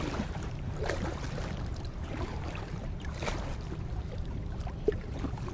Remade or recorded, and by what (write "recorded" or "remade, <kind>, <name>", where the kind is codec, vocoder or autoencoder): remade, vocoder, BigVGAN v2